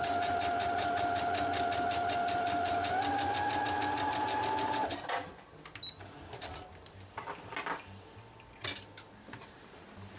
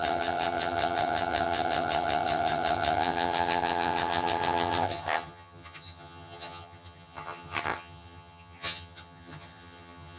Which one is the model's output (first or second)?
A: second